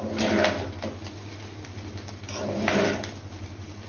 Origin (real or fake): real